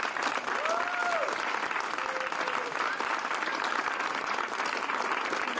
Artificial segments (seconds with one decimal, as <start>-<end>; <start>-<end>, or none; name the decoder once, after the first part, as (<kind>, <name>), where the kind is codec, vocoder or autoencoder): none